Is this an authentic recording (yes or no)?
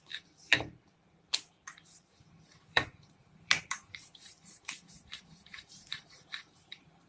no